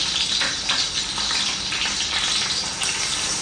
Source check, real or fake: real